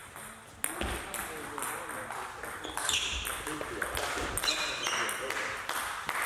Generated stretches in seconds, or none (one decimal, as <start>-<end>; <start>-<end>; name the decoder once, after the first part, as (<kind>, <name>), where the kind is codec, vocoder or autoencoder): none